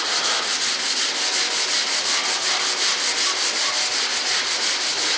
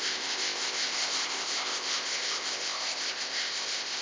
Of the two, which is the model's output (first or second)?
second